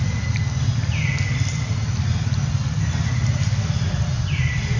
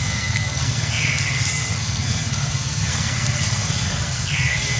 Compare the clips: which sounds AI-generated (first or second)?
second